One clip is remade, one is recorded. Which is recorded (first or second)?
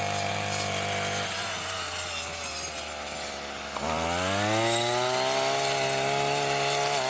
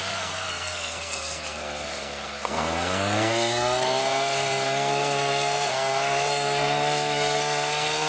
first